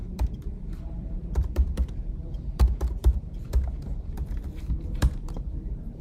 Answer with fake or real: fake